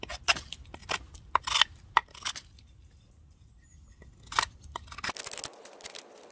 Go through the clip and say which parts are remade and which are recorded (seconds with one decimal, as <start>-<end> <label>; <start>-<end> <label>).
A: 0.0-2.0 recorded; 2.0-4.0 remade; 4.0-6.3 recorded